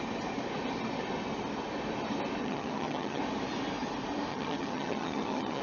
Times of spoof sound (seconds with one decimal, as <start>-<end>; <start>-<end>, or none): 2.4-3.2; 4.3-5.6